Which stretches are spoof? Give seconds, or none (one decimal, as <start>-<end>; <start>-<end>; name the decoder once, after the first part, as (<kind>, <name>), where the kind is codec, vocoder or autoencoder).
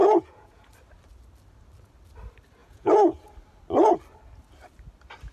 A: 0.0-0.7 (vocoder, Vocos); 2.6-3.3